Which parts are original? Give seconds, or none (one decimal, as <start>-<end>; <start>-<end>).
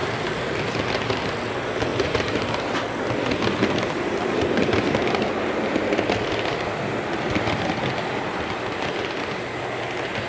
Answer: 0.0-1.9; 2.6-10.3